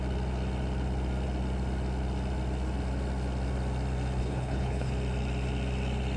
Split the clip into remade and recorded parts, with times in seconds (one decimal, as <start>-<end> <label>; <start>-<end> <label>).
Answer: 0.0-4.2 recorded; 4.2-4.9 remade; 4.9-6.2 recorded